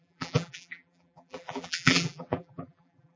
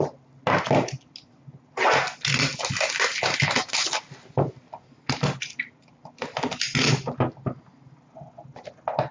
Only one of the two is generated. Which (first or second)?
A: first